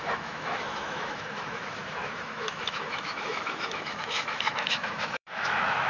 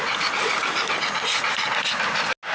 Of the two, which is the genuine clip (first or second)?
second